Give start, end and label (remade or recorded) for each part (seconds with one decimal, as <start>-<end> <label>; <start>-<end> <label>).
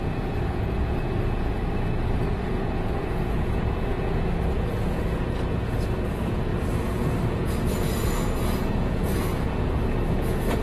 0.0-10.6 remade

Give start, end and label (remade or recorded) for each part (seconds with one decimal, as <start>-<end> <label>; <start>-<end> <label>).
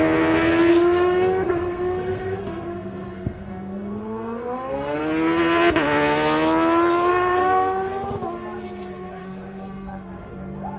0.0-0.7 recorded; 0.7-5.0 remade; 5.0-7.1 recorded; 7.1-7.9 remade; 7.9-9.2 recorded; 9.2-10.3 remade; 10.3-10.8 recorded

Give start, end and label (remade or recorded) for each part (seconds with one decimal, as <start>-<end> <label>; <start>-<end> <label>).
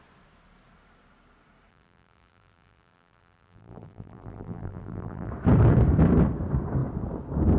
0.0-1.7 recorded; 1.7-5.3 remade; 5.3-7.6 recorded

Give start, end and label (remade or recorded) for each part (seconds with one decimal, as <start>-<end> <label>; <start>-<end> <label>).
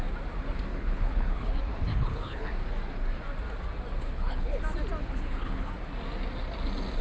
0.0-0.7 recorded; 0.7-1.5 remade; 1.5-1.9 recorded; 1.9-2.5 remade; 2.5-4.0 recorded; 4.0-4.6 remade; 4.6-5.0 recorded; 5.0-5.7 remade; 5.7-7.0 recorded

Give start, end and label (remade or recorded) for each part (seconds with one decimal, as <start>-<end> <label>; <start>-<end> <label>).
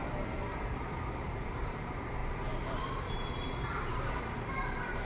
0.0-0.5 recorded; 0.5-1.8 remade; 1.8-2.2 recorded; 2.2-5.0 remade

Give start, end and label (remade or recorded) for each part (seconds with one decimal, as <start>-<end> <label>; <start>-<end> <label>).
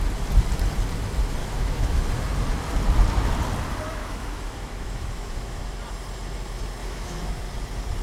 0.0-1.4 recorded; 1.4-2.0 remade; 2.0-4.0 recorded; 4.0-5.6 remade; 5.6-6.8 recorded; 6.8-7.3 remade; 7.3-8.0 recorded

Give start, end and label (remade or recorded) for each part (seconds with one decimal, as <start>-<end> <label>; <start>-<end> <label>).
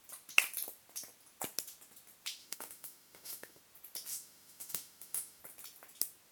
0.0-2.4 recorded; 2.4-3.6 remade; 3.6-4.1 recorded; 4.1-5.4 remade; 5.4-6.3 recorded